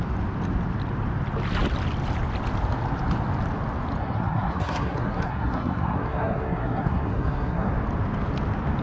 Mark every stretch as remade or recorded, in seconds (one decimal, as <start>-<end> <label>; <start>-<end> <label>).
0.0-4.0 recorded; 4.0-7.7 remade; 7.7-8.8 recorded